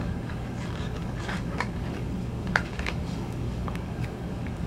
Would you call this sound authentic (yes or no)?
no